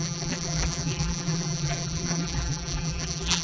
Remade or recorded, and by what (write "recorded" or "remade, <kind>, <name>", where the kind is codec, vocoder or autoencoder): remade, vocoder, BigVGAN v2